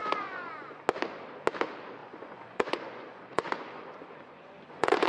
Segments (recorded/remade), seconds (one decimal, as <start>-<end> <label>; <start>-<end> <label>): 0.0-0.8 remade; 0.8-2.0 recorded; 2.0-5.1 remade